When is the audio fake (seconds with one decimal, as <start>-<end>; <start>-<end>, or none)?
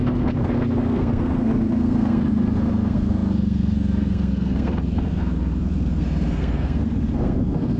0.0-7.8